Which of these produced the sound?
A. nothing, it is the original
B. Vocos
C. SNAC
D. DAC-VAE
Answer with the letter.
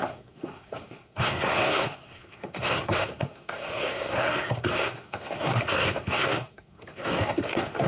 C